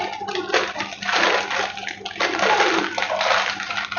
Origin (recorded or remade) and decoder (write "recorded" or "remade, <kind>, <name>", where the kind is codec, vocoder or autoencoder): recorded